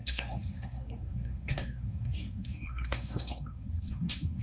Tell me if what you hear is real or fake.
fake